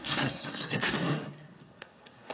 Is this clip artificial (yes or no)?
yes